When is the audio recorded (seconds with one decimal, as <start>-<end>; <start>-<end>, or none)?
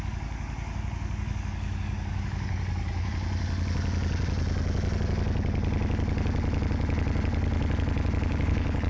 3.1-8.3